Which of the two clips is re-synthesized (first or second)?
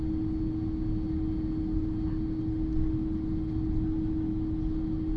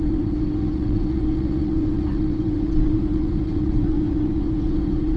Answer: second